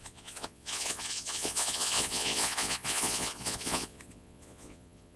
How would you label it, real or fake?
fake